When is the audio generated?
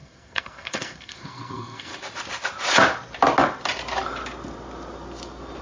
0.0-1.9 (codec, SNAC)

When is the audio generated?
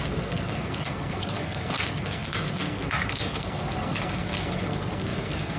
0.0-5.6 (codec, SNAC)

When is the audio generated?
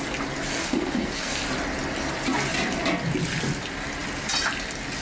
0.5-1.4 (codec, SNAC)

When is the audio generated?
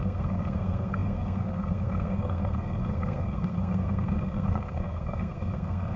0.0-6.0 (codec, SNAC)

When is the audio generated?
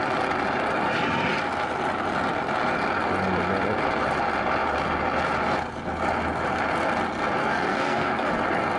7.4-8.3 (codec, SNAC)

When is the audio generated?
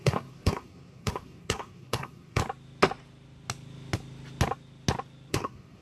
0.0-2.4 (codec, SNAC); 5.3-5.8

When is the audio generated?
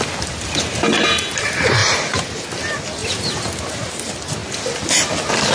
none